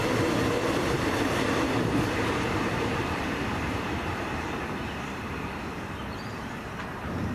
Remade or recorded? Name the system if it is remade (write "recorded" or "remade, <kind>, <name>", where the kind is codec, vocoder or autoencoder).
remade, vocoder, BigVGAN v2